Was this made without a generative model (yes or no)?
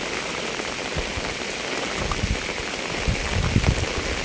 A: yes